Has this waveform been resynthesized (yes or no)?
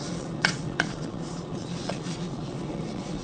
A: yes